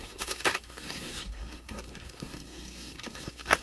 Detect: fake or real fake